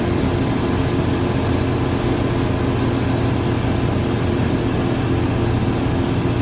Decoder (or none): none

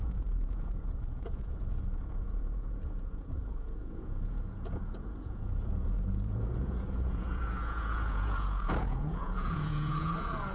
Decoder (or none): vocoder, Vocos